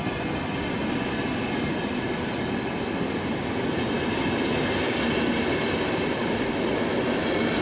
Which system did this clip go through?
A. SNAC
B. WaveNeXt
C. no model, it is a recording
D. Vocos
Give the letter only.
C